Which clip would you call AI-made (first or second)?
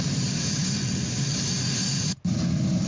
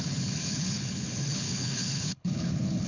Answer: second